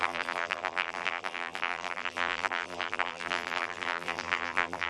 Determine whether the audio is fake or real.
fake